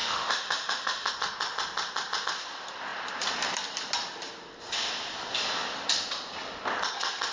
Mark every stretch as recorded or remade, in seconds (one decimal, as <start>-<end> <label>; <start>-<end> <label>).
0.0-1.1 remade; 1.1-7.3 recorded